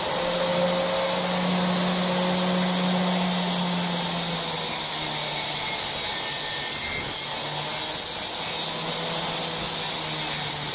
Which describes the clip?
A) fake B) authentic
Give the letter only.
B